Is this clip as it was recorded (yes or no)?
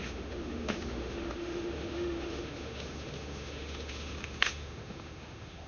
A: no